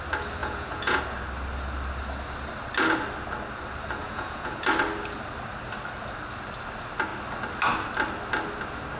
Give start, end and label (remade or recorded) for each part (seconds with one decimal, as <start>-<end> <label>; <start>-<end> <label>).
0.0-0.4 recorded; 0.4-1.0 remade; 1.0-4.0 recorded; 4.0-4.6 remade; 4.6-9.0 recorded

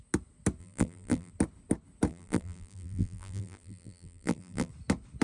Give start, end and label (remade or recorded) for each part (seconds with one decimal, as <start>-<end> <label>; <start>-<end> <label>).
0.0-0.6 recorded; 0.6-1.3 remade; 1.3-2.1 recorded; 2.1-4.7 remade; 4.7-5.2 recorded

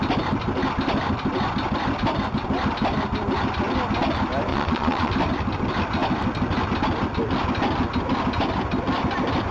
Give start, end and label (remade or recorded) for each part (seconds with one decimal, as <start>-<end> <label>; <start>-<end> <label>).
0.0-4.5 recorded; 4.5-5.1 remade; 5.1-9.5 recorded

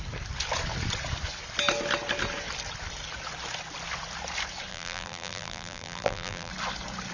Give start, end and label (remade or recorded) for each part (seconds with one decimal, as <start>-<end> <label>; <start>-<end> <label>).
0.0-4.7 recorded; 4.7-6.5 remade; 6.5-7.1 recorded

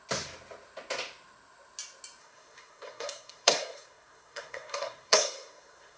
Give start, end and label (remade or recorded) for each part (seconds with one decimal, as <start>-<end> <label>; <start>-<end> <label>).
0.0-2.2 recorded; 2.2-6.0 remade

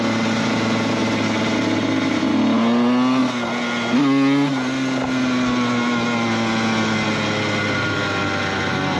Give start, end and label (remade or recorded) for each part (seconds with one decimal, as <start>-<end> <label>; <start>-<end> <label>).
0.0-9.0 recorded